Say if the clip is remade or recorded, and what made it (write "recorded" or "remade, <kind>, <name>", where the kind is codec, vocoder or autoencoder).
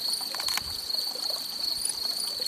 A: recorded